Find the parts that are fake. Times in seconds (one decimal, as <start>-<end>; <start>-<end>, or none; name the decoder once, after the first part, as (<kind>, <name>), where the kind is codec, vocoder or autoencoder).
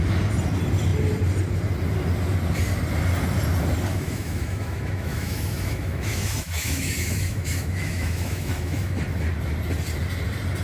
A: 3.9-9.0 (autoencoder, DAC-VAE)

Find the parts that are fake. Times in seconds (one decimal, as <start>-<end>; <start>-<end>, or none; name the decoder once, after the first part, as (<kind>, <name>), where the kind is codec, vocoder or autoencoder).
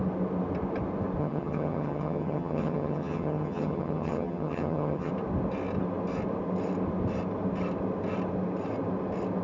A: 1.2-5.1 (vocoder, HiFi-GAN)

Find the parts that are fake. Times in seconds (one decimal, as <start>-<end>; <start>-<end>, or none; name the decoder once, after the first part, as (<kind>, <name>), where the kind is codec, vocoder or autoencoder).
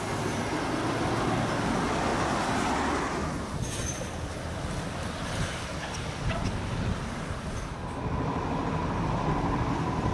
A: none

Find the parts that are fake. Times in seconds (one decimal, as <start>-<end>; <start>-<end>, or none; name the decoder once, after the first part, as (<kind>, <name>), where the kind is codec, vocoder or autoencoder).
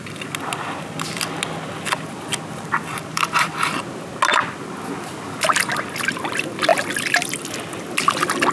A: none